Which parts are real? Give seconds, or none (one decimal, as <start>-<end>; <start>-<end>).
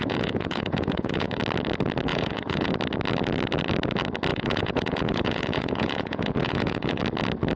1.4-2.1; 2.7-4.3; 7.0-7.6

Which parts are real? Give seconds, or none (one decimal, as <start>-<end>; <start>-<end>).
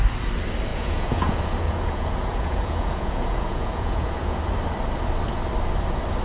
0.0-0.7; 4.4-6.2